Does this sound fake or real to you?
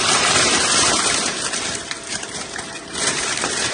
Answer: fake